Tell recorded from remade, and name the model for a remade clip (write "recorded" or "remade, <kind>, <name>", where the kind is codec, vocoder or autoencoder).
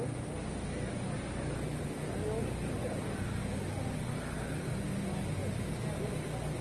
recorded